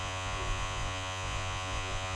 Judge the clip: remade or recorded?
remade